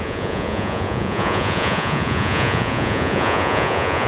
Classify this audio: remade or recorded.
remade